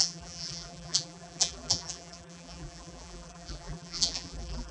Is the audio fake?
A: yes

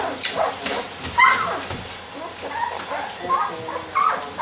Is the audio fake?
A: no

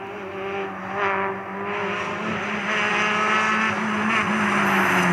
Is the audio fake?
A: no